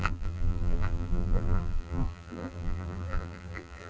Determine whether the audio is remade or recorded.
remade